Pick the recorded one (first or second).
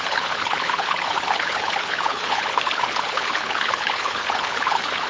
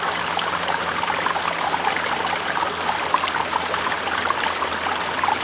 second